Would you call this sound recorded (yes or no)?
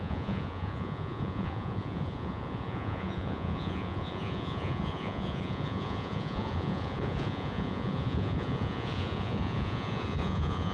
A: no